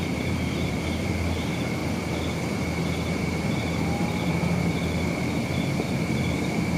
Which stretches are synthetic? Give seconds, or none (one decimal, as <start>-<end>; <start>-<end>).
0.0-1.8; 5.7-6.8